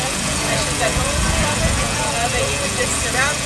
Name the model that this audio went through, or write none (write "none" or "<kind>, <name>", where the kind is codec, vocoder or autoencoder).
vocoder, Vocos